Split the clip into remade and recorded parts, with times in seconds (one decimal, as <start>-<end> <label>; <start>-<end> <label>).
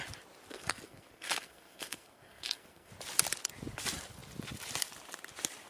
0.0-0.5 recorded; 0.5-2.9 remade; 2.9-5.7 recorded